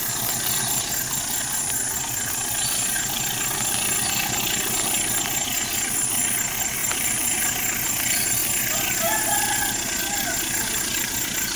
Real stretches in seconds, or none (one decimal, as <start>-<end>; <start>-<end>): 0.0-6.8; 7.4-11.6